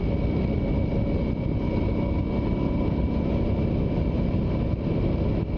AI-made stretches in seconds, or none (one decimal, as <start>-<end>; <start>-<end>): none